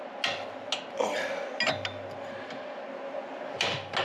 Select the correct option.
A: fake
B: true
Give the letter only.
B